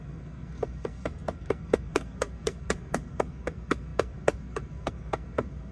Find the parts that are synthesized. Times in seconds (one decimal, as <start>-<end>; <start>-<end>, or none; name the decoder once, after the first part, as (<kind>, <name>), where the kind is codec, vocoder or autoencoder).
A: 0.0-5.7 (codec, SNAC)